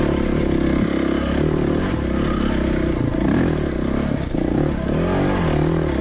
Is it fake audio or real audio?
real